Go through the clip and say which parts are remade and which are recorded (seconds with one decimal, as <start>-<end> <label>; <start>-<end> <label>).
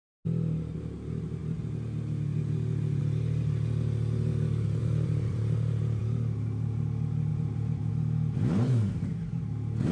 0.0-4.8 recorded; 4.8-6.0 remade; 6.0-7.3 recorded; 7.3-7.9 remade; 7.9-9.9 recorded